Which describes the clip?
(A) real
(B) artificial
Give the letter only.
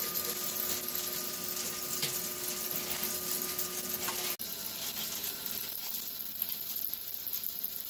A